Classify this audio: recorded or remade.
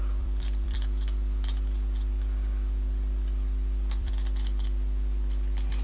remade